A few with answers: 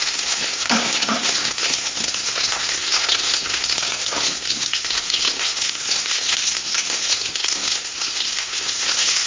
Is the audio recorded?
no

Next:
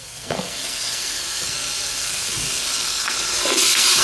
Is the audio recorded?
no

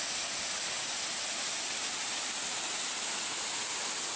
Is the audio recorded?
yes